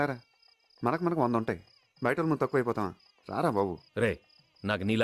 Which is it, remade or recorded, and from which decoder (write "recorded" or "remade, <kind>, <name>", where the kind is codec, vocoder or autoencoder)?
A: recorded